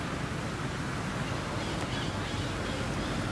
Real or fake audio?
real